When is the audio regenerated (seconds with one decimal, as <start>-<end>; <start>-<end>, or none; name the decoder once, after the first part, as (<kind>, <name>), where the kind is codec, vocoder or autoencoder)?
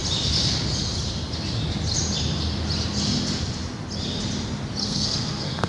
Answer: 4.8-5.7 (codec, SNAC)